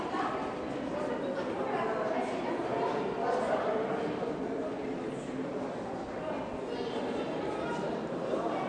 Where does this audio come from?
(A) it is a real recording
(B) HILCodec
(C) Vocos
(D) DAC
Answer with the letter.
A